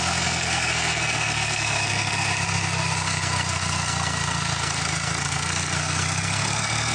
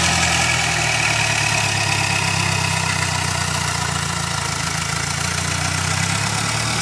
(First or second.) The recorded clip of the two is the second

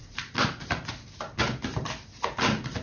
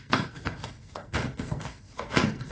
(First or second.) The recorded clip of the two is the first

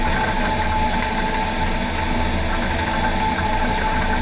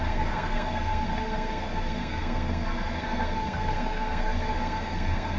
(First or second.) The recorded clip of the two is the first